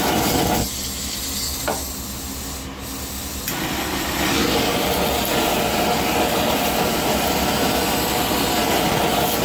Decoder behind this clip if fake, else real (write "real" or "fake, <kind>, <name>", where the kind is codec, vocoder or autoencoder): real